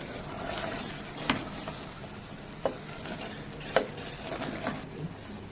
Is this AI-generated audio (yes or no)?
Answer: no